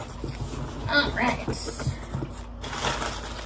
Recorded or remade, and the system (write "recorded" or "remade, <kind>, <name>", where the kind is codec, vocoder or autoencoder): recorded